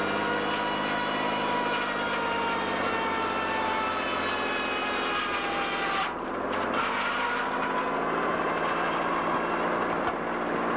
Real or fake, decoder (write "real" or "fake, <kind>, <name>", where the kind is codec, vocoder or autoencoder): real